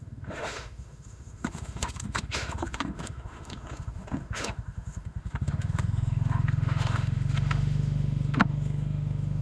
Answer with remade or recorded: remade